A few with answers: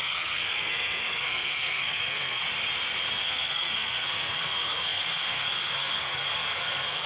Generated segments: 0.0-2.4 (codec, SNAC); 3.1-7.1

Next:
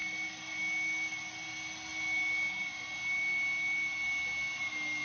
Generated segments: 0.0-0.6 (vocoder, BigVGAN v2)